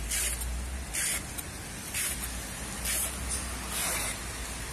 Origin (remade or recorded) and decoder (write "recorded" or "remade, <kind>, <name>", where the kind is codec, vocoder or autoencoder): recorded